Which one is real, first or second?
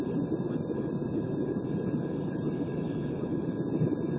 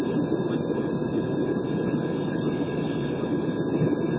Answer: second